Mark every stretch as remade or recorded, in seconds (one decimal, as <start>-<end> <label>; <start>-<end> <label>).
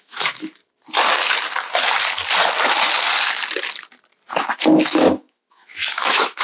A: 0.0-0.6 remade; 0.6-4.4 recorded; 4.4-6.4 remade